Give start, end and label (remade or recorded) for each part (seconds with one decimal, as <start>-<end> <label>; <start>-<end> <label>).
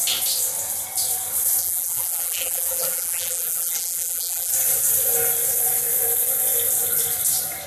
0.0-1.6 recorded; 1.6-4.5 remade; 4.5-7.7 recorded